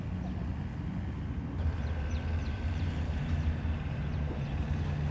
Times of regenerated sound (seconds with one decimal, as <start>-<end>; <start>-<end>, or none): 2.4-4.6